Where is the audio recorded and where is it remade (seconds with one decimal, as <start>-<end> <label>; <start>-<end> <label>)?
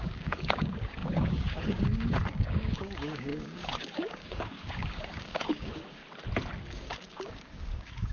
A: 0.0-6.0 remade; 6.0-6.7 recorded; 6.7-8.1 remade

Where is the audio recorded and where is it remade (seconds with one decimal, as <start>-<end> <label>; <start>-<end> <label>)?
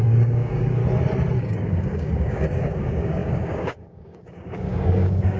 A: 0.0-0.8 remade; 0.8-1.4 recorded; 1.4-5.4 remade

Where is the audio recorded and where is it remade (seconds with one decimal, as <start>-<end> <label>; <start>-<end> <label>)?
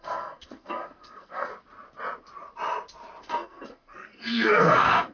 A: 0.0-1.5 remade; 1.5-3.2 recorded; 3.2-5.1 remade